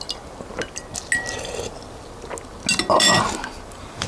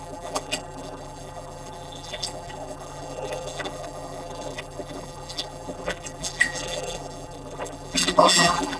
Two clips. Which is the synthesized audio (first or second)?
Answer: second